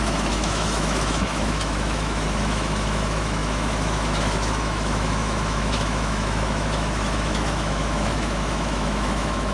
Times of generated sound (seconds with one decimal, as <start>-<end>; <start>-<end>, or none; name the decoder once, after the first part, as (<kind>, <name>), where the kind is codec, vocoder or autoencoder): 0.0-9.5 (autoencoder, DAC-VAE)